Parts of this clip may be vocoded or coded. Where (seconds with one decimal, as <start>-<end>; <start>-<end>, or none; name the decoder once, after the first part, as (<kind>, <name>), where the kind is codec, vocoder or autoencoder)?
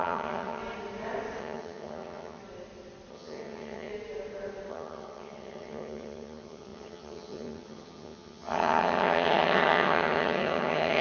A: 0.0-0.6 (vocoder, HiFi-GAN); 1.4-2.4; 3.1-3.9; 4.7-11.0